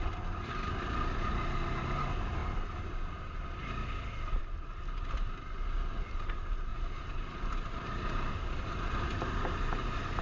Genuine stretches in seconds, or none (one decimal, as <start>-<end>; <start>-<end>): 0.0-6.7; 9.0-10.2

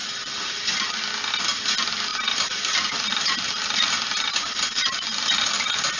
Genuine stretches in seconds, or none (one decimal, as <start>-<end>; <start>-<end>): 0.6-2.1

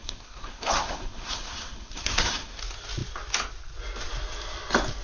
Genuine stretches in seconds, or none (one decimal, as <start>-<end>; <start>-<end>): 2.6-5.0

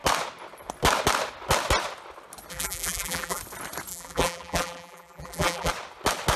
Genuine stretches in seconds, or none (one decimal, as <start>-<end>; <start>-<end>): 0.0-2.5; 3.4-3.9; 5.7-6.4

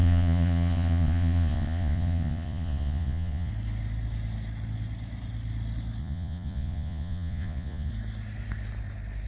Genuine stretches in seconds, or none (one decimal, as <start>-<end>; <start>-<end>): 3.5-6.0; 7.9-9.3

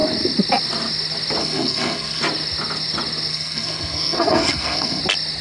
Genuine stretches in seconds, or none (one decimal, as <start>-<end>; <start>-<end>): 0.0-1.4; 2.2-3.3; 5.0-5.4

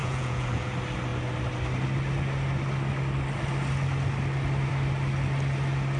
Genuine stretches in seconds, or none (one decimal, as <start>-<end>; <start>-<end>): 0.7-6.0